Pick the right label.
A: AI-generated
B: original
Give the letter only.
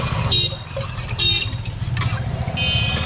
B